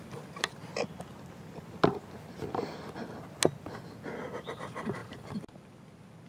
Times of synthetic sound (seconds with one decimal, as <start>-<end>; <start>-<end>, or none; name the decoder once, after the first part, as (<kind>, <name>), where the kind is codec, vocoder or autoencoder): 0.0-0.7 (vocoder, BigVGAN v2); 4.5-6.3